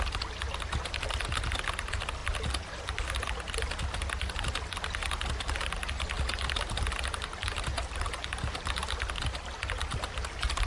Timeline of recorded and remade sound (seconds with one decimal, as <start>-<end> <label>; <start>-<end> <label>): 0.0-10.7 recorded